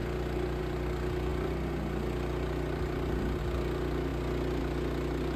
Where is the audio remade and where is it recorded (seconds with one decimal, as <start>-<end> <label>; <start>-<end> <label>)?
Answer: 0.0-5.4 recorded